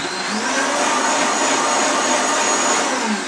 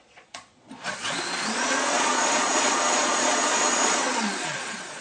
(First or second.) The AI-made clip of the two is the second